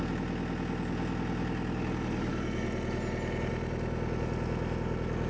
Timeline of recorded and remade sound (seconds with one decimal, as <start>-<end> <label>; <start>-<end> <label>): 0.0-5.3 recorded